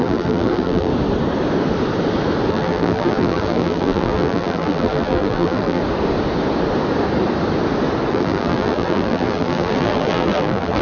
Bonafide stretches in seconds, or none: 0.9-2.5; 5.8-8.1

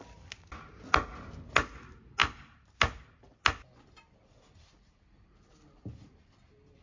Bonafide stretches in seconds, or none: 0.0-2.2; 2.7-6.8

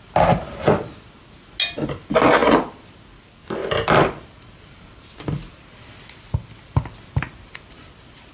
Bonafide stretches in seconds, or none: 0.0-8.3

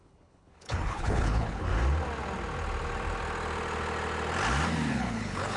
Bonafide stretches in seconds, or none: 1.7-4.9

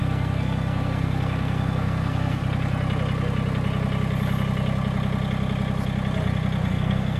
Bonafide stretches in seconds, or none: 2.4-6.7

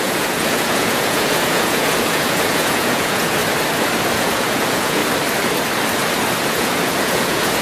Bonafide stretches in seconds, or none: 3.4-4.1; 5.0-6.5